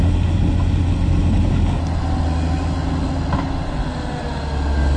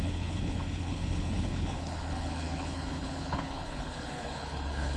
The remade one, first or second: second